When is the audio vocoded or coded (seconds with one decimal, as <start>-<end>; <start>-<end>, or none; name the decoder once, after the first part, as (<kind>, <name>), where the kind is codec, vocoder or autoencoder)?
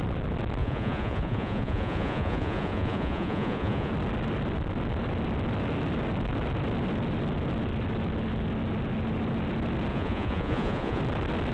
0.6-3.9 (vocoder, Vocos); 9.9-11.0